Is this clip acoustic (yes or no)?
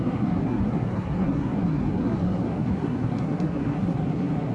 no